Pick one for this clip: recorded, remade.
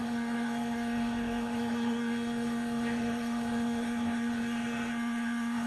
remade